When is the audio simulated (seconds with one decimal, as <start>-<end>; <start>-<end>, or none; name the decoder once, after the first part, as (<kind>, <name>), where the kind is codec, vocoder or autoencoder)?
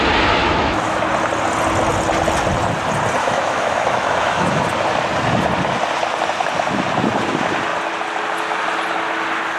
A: 0.4-1.0 (autoencoder, DAC-VAE); 3.2-4.6